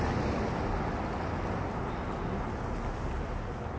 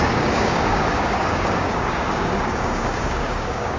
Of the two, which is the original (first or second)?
first